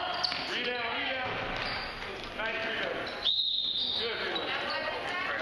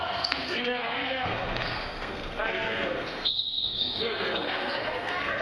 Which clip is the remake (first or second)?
second